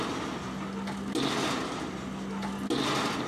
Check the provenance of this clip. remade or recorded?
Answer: recorded